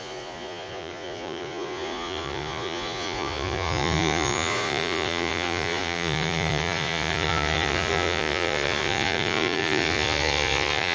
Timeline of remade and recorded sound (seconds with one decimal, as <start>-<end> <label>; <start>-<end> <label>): 0.0-10.9 remade